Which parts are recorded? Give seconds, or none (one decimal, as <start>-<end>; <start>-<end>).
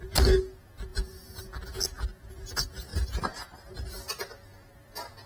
0.0-2.9; 3.9-5.3